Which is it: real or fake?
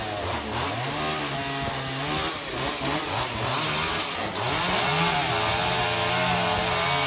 real